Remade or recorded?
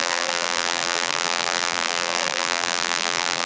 remade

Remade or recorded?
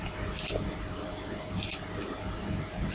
remade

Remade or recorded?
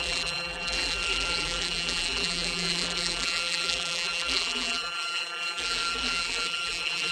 remade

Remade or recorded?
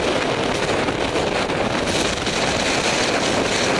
recorded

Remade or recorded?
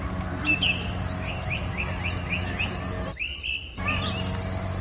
recorded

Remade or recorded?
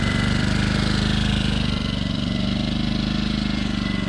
remade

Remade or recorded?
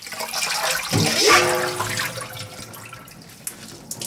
recorded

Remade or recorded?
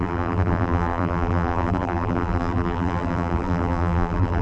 remade